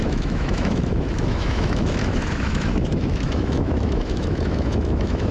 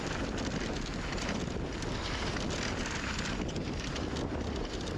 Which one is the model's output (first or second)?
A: first